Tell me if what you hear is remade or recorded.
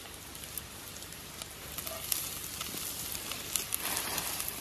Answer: recorded